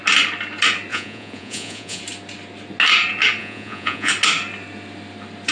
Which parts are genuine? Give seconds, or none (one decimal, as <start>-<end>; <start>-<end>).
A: 0.0-0.9; 2.0-3.4; 4.1-5.5